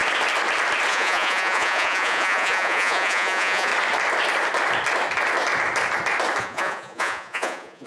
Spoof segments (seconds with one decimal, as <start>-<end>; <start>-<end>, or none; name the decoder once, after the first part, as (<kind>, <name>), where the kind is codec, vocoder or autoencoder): 0.9-3.7 (vocoder, Vocos); 6.4-7.9